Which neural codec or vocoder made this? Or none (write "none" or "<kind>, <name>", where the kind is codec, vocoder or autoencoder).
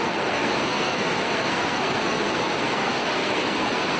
codec, SNAC